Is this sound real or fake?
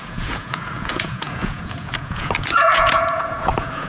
fake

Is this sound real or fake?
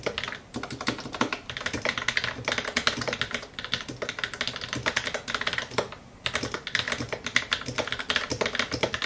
real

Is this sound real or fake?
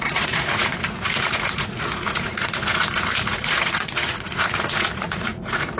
fake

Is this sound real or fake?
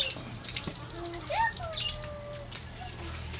real